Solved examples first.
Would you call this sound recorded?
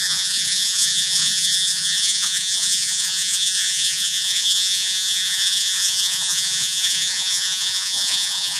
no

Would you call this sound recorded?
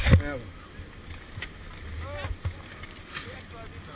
yes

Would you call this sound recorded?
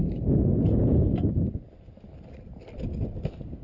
yes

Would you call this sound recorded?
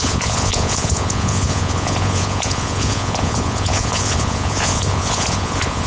no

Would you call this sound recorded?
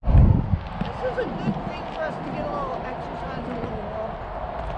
yes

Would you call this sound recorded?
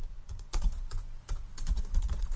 no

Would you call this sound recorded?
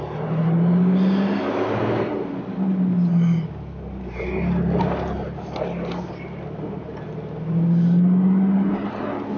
yes